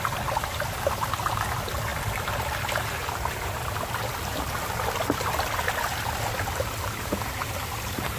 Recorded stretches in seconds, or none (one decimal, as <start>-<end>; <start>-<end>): 0.0-1.9; 6.2-8.2